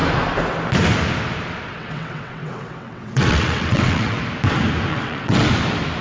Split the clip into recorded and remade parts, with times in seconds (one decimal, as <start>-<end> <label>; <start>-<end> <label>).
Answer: 0.0-1.7 recorded; 1.7-4.2 remade; 4.2-4.9 recorded; 4.9-5.5 remade; 5.5-6.0 recorded